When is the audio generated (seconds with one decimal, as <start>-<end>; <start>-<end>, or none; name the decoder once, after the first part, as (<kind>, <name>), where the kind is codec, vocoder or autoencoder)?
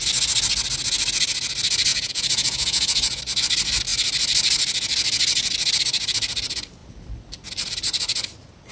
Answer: 1.9-3.2 (vocoder, Vocos)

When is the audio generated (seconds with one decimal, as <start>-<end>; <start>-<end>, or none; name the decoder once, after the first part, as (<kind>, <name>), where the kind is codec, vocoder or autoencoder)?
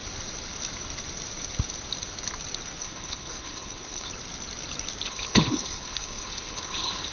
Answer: 2.8-4.1 (codec, HILCodec); 5.1-7.1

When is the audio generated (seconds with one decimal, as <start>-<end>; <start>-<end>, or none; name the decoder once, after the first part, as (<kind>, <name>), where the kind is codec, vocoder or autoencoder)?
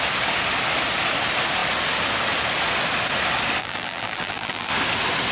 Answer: 3.6-4.7 (vocoder, BigVGAN v2)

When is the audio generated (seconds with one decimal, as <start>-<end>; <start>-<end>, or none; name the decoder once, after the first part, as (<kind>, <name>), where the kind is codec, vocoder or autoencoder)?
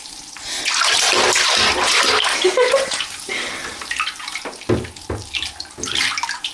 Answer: none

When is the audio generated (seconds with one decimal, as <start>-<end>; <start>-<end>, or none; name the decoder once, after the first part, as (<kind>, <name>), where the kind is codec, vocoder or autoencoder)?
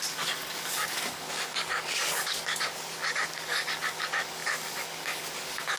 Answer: 0.0-5.8 (codec, DAC)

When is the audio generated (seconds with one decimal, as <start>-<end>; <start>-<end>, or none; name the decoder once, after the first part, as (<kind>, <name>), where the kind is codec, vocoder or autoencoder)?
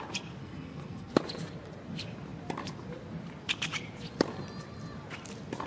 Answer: 0.4-1.1 (codec, SNAC)